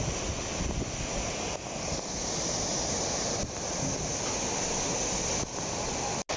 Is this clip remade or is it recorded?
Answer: recorded